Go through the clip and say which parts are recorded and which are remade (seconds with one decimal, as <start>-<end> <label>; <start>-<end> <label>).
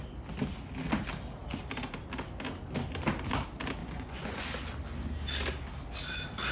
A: 0.0-3.8 recorded; 3.8-4.4 remade; 4.4-6.5 recorded